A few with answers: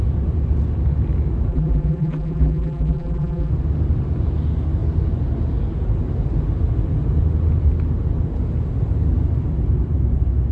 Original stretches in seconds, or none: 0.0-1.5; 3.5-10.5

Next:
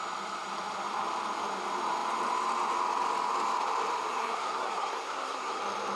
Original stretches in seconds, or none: 0.0-4.1; 5.6-6.0

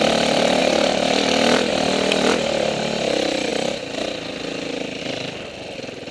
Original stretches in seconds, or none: 0.0-6.1

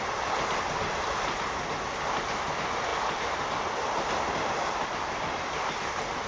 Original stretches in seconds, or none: 0.0-6.3